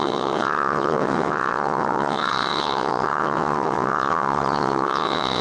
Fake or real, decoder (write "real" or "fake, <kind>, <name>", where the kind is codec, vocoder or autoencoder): fake, vocoder, WaveNeXt